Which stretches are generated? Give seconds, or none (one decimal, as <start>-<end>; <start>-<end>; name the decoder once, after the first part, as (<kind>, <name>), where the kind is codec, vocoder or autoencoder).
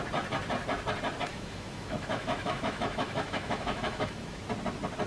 1.3-4.4 (autoencoder, DAC-VAE)